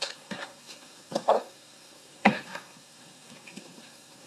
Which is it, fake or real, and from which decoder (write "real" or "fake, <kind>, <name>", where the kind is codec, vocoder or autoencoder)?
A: fake, codec, SNAC